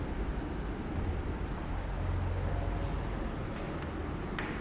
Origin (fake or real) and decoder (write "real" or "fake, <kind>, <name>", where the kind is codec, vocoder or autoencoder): real